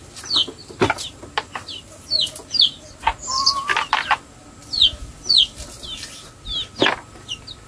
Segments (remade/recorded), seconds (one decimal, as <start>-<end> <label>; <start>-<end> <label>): 0.0-0.4 recorded; 0.4-1.2 remade; 1.2-7.7 recorded